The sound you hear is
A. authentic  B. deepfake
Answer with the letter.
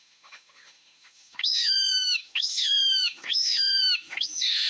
B